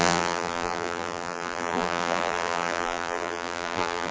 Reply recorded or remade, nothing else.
remade